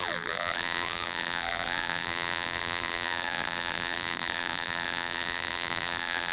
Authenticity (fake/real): fake